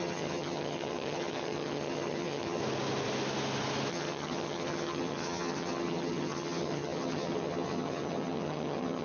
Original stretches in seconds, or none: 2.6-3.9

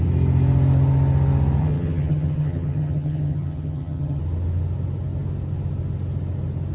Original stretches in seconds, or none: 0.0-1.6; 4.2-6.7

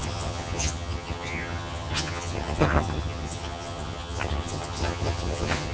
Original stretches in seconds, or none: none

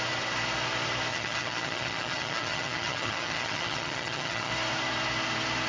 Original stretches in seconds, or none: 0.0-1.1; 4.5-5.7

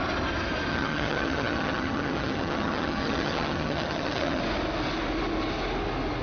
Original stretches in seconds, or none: 0.0-0.7; 4.4-6.2